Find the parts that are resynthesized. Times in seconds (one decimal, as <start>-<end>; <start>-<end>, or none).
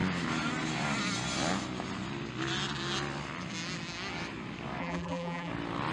4.8-5.5